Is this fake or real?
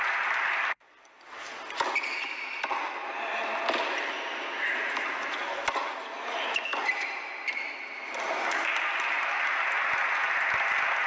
real